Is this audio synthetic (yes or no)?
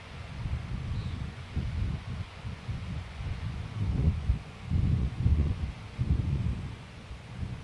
yes